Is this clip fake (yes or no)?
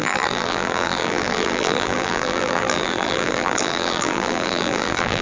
yes